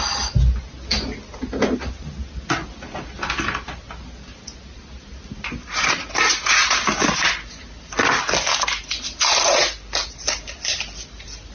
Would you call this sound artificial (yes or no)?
no